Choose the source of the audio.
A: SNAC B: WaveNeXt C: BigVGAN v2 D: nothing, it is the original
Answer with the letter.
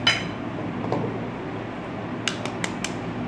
D